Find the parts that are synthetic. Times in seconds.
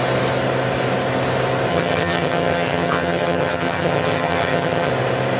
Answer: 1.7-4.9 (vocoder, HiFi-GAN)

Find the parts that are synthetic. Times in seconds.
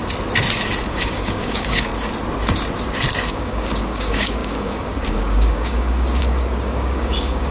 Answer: 0.9-1.9 (codec, DAC); 3.3-7.5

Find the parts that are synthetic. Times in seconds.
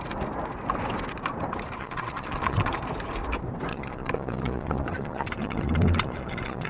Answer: 1.8-2.7 (vocoder, Vocos); 3.7-6.7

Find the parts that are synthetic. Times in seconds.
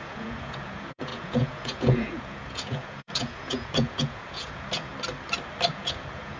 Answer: 0.0-4.9 (vocoder, Vocos); 5.7-6.4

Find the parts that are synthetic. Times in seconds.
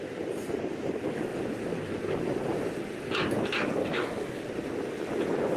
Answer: 3.8-4.4 (codec, DAC)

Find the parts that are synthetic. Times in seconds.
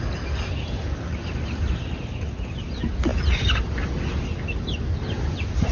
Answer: none